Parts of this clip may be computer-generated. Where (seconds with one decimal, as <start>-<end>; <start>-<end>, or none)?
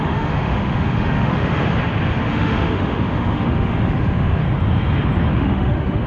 0.0-1.6; 2.3-4.4; 5.3-6.1